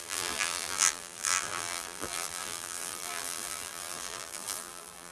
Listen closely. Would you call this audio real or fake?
fake